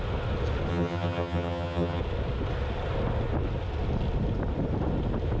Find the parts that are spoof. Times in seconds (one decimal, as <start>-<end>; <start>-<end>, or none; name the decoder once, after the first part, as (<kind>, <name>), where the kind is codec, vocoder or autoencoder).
0.7-2.0 (vocoder, HiFi-GAN)

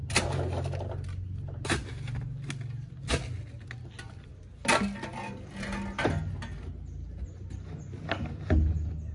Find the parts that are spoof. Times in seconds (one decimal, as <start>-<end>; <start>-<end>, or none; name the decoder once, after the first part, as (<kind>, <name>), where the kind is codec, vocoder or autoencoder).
none

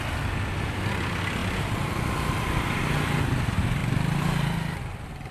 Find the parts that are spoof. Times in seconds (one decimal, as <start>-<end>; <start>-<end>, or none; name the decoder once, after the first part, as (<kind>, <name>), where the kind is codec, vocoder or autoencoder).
none

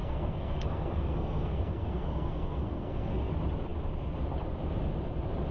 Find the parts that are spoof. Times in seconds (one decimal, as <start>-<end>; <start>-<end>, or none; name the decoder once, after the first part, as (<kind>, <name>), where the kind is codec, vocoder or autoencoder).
0.0-3.3 (codec, SNAC)

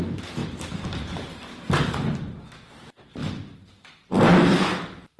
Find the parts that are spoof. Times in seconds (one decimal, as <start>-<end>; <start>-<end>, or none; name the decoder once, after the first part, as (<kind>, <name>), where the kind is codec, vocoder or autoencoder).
0.4-1.9 (vocoder, BigVGAN v2); 3.2-4.2

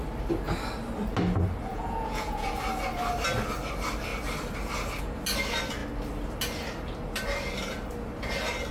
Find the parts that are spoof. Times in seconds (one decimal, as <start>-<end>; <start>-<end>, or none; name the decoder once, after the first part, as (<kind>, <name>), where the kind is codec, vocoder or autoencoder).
1.7-2.6 (vocoder, Vocos)

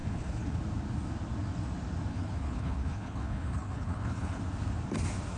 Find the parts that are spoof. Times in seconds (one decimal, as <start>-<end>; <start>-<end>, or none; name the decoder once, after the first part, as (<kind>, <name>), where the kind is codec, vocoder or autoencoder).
0.0-0.6 (codec, HILCodec); 2.1-4.4

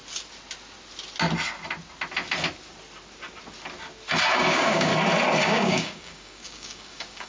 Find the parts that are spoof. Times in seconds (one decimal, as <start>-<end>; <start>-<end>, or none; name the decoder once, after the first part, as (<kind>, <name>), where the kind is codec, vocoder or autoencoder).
4.3-4.9 (codec, DAC); 5.4-7.3